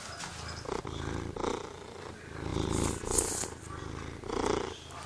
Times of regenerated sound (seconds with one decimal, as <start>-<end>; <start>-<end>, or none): none